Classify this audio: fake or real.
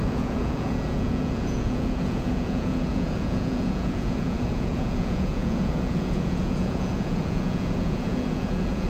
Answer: fake